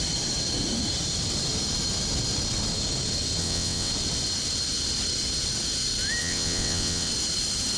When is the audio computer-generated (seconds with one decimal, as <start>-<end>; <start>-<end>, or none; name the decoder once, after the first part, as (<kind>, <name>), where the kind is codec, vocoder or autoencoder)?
3.4-3.9 (vocoder, WaveNeXt); 6.2-7.1

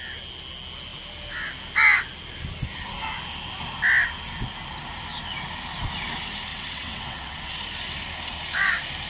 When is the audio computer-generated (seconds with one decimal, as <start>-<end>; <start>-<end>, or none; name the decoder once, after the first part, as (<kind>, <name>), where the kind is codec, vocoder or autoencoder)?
6.5-7.5 (vocoder, WaveNeXt)

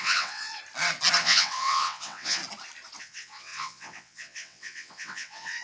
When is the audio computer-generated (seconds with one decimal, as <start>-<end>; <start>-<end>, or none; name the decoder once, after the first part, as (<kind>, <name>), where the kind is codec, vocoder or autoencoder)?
0.0-0.6 (vocoder, WaveNeXt); 1.2-2.4; 3.0-5.6

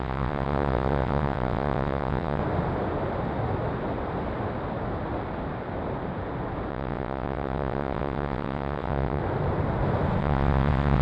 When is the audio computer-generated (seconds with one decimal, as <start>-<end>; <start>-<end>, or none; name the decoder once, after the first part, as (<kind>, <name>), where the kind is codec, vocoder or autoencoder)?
0.0-2.4 (vocoder, WaveNeXt); 6.7-9.2; 10.2-11.0

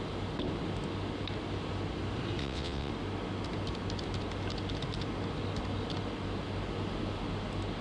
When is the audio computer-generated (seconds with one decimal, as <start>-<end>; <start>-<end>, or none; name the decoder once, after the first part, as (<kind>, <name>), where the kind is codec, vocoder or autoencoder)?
2.4-2.9 (vocoder, WaveNeXt)